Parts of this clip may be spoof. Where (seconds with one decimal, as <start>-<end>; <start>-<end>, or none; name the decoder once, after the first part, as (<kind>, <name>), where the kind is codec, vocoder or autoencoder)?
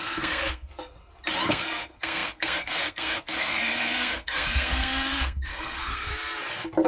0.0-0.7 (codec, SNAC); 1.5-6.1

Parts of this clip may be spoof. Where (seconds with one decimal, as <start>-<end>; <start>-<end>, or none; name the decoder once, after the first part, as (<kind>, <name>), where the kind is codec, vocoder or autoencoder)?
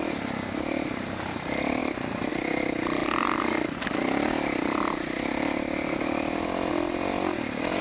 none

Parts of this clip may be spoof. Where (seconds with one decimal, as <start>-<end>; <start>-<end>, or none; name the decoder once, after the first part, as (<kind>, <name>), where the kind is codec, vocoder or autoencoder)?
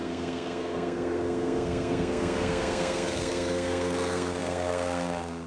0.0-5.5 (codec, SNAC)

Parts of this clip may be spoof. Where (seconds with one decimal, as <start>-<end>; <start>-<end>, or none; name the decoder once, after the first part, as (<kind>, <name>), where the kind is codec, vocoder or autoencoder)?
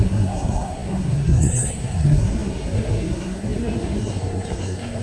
0.0-5.0 (codec, SNAC)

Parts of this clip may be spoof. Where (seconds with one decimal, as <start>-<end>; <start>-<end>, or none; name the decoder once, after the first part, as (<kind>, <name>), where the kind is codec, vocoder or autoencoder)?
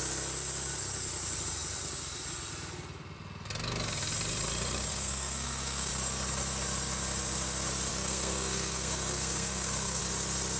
4.9-5.9 (codec, SNAC); 7.9-10.0